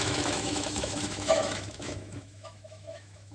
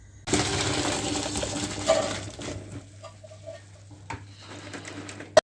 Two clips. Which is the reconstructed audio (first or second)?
first